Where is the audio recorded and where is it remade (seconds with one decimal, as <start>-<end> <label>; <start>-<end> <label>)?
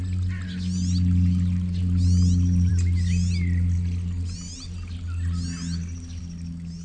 0.0-6.8 recorded